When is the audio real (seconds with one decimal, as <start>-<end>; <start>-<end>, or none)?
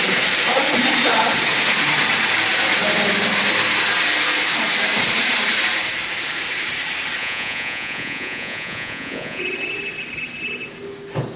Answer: 0.0-7.2; 9.4-11.4